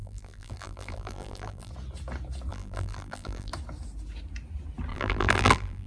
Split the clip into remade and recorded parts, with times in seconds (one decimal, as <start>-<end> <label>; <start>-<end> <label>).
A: 0.0-1.7 remade; 1.7-2.5 recorded; 2.5-3.5 remade; 3.5-4.9 recorded; 4.9-5.9 remade